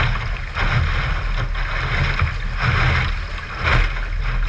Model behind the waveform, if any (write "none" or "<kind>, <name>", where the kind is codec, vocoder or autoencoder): none